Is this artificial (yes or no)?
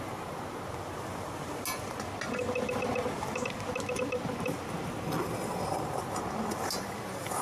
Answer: no